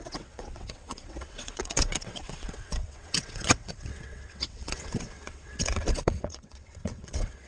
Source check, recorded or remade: remade